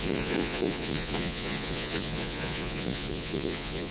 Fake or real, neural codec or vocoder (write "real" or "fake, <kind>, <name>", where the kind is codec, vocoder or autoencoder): fake, vocoder, Vocos